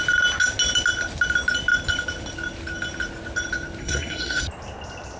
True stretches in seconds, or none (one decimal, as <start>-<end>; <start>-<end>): 0.0-3.8; 4.4-5.2